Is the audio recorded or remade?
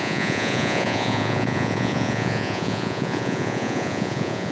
remade